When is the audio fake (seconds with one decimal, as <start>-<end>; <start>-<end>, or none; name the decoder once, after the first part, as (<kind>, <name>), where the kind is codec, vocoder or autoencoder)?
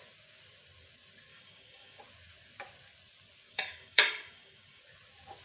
1.3-2.0 (codec, DAC); 3.5-4.8